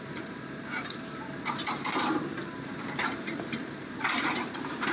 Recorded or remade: remade